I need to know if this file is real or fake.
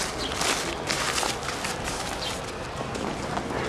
real